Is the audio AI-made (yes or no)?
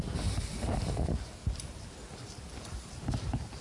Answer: no